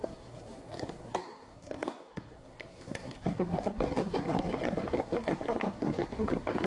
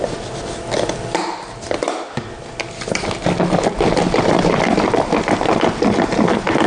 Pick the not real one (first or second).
first